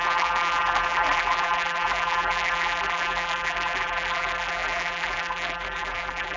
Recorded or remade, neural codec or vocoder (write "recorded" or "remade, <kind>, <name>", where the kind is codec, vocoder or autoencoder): remade, vocoder, BigVGAN v2